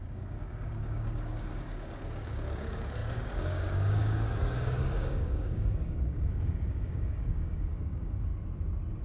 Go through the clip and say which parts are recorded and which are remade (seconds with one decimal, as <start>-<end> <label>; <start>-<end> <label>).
0.0-8.3 remade; 8.3-9.0 recorded